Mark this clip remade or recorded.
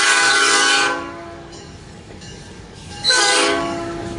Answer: remade